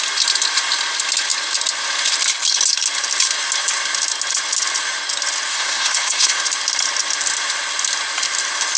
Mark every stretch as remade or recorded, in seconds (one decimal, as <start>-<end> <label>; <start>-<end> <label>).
0.0-5.5 recorded; 5.5-6.4 remade; 6.4-8.8 recorded